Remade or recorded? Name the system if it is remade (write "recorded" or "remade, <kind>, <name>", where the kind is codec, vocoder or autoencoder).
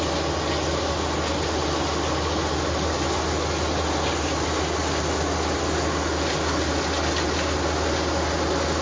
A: recorded